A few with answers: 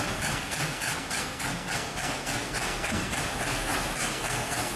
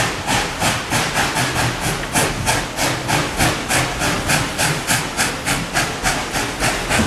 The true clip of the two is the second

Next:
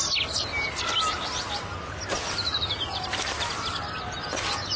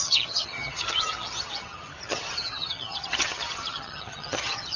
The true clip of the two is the first